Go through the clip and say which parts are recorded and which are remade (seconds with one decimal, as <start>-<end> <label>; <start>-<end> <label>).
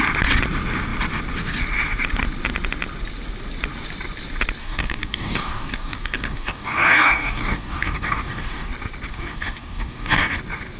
0.0-4.6 recorded; 4.6-8.7 remade; 8.7-9.1 recorded; 9.1-10.4 remade; 10.4-10.8 recorded